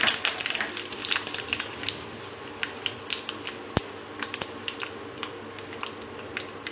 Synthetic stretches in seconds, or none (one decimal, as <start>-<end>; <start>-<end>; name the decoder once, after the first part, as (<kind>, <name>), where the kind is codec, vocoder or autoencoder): none